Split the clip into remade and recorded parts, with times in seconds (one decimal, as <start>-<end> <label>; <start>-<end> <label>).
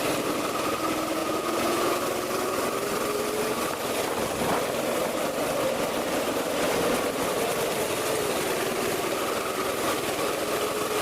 0.0-1.2 recorded; 1.2-2.0 remade; 2.0-11.0 recorded